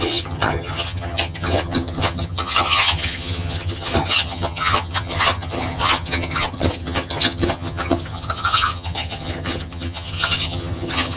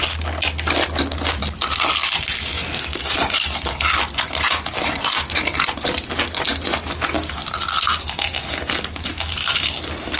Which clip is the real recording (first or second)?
second